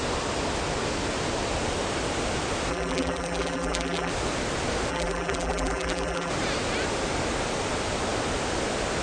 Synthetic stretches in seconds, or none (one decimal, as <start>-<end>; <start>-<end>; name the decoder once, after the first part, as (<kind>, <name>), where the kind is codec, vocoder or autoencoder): 2.7-4.1 (vocoder, BigVGAN v2); 4.9-6.3